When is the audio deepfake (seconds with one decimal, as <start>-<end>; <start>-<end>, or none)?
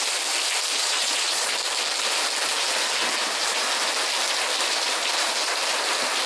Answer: 0.8-1.5